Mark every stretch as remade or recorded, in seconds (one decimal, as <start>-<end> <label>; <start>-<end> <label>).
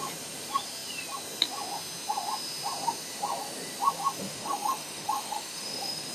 0.0-4.2 recorded; 4.2-6.1 remade